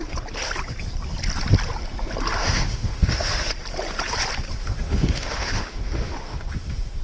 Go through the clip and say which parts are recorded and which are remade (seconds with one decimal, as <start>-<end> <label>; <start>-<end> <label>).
0.0-2.4 recorded; 2.4-3.5 remade; 3.5-4.6 recorded; 4.6-7.0 remade